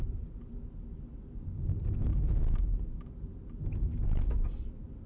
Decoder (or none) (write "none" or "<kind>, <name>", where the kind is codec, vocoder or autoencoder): none